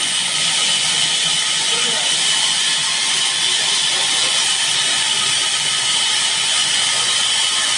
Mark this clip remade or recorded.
remade